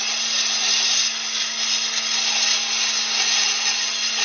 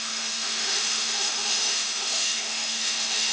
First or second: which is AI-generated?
second